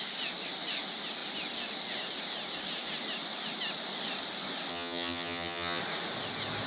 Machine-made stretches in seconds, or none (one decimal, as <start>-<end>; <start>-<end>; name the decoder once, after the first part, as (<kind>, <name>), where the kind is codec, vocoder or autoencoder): 4.7-5.8 (vocoder, HiFi-GAN)